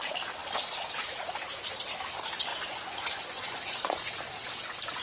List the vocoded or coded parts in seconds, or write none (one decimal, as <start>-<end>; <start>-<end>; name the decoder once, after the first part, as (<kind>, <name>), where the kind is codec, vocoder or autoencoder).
2.5-4.1 (vocoder, Vocos)